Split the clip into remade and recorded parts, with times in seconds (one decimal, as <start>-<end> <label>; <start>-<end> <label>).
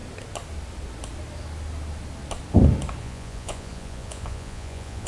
0.0-3.0 recorded; 3.0-5.1 remade